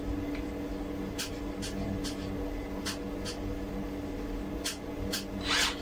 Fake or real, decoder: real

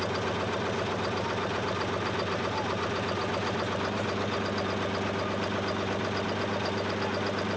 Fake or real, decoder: real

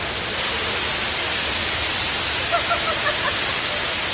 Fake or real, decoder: real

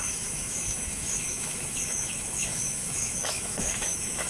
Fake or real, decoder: fake, autoencoder, DAC-VAE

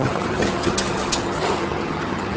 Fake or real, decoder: fake, vocoder, HiFi-GAN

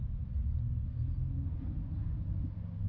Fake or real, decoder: real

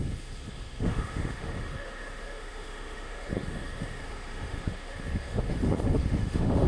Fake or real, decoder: fake, autoencoder, DAC-VAE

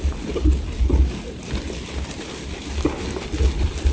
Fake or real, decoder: real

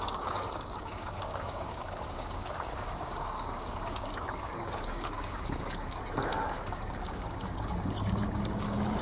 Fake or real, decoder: fake, codec, DAC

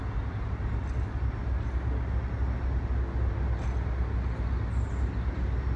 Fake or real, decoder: real